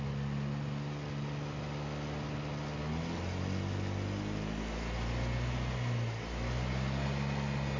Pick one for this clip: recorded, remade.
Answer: recorded